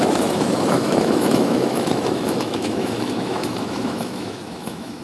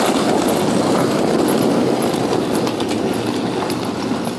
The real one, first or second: second